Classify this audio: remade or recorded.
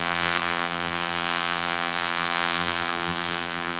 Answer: remade